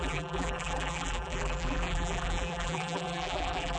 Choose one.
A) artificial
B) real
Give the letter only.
A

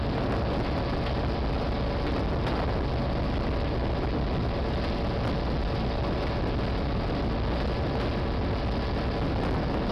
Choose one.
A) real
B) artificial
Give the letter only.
A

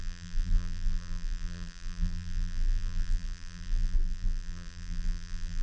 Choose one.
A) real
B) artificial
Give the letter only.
B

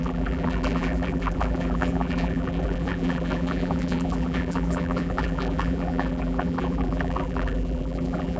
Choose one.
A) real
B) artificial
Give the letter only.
B